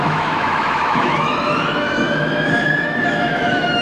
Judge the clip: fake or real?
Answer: fake